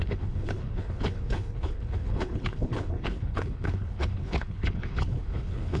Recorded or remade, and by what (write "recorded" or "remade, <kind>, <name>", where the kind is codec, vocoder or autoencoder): remade, codec, HILCodec